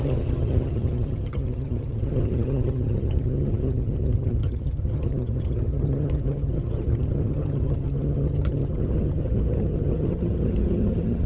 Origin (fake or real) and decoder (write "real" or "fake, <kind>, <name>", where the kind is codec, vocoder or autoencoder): fake, vocoder, HiFi-GAN